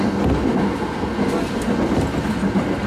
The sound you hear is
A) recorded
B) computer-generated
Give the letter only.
A